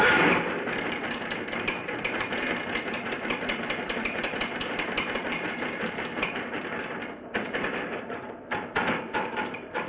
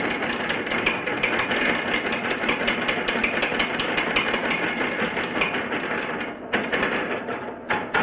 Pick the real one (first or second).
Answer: second